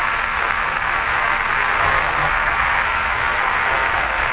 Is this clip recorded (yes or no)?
no